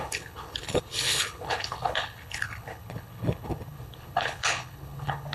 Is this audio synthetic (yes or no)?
yes